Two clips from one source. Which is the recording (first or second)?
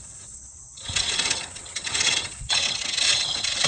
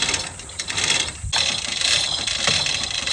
second